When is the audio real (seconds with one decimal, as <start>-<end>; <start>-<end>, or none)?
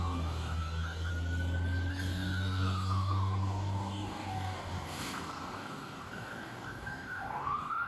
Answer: 1.1-1.9